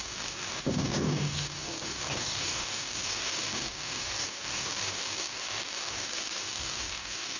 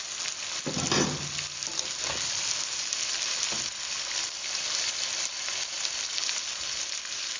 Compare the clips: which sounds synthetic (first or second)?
first